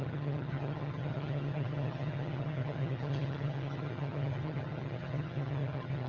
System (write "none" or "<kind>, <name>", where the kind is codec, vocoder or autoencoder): vocoder, HiFi-GAN